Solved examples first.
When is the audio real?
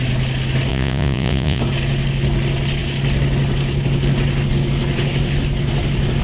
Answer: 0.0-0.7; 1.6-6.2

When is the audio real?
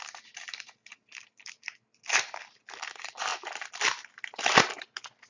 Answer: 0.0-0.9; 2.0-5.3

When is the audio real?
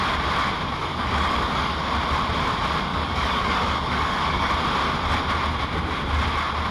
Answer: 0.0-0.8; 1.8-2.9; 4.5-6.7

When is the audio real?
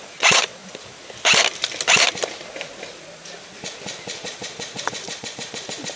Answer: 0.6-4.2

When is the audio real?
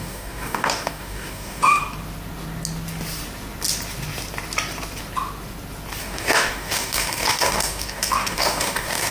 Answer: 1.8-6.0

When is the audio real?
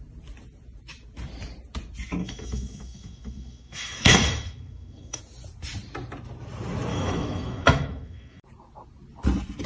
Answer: 0.0-2.2; 5.2-6.9; 8.4-9.7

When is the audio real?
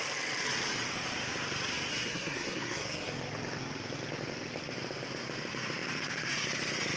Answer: 0.0-1.9; 3.1-7.0